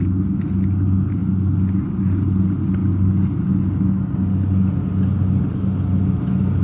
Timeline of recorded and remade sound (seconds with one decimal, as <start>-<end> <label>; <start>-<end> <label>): 0.0-6.6 recorded

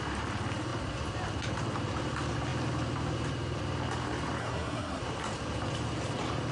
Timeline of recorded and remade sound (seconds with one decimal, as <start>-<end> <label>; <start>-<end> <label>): 0.0-4.4 recorded; 4.4-5.0 remade; 5.0-6.5 recorded

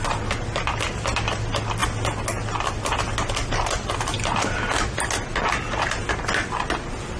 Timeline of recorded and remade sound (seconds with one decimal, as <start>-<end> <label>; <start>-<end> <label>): 0.0-7.2 recorded